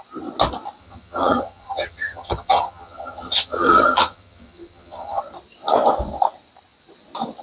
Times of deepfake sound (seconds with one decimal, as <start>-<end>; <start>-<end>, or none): 0.8-5.2